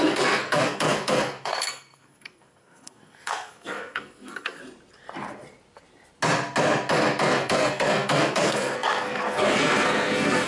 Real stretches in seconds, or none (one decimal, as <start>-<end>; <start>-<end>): 4.6-7.2